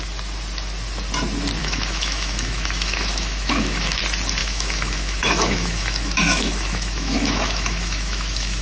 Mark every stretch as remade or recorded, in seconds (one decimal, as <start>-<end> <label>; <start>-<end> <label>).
0.0-1.6 recorded; 1.6-4.0 remade; 4.0-4.4 recorded; 4.4-8.6 remade